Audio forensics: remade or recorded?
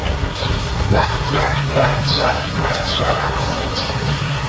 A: remade